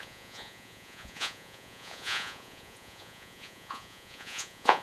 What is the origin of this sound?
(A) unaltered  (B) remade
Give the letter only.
B